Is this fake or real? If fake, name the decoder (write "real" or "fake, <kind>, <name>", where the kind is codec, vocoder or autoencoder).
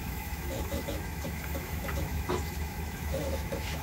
fake, autoencoder, DAC-VAE